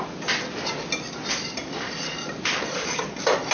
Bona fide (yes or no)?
yes